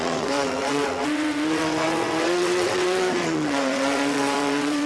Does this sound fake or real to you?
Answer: fake